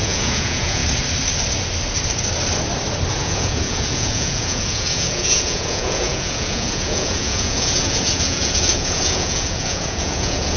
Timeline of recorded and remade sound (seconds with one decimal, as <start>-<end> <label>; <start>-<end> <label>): 0.0-0.8 remade; 0.8-3.1 recorded; 3.1-10.6 remade